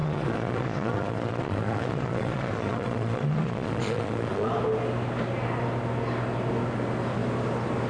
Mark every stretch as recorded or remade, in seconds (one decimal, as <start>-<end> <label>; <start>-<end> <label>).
0.0-4.5 remade; 4.5-7.9 recorded